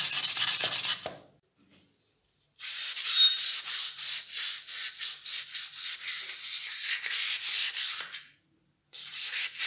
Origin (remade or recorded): recorded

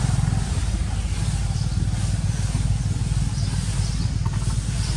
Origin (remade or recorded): recorded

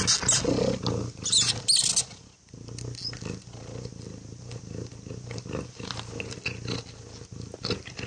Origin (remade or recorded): recorded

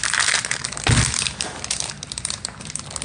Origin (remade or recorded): recorded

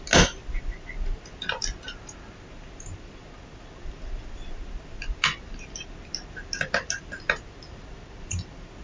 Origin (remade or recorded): recorded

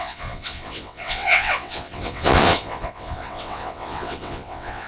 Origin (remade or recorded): remade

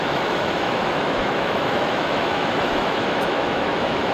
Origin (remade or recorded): remade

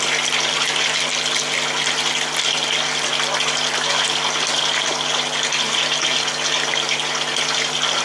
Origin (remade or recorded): recorded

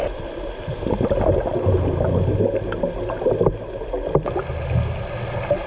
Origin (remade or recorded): recorded